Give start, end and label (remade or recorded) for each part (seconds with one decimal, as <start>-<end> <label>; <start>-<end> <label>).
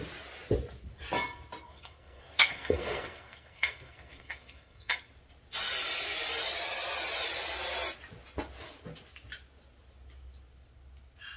0.0-1.6 recorded; 1.6-5.1 remade; 5.1-11.4 recorded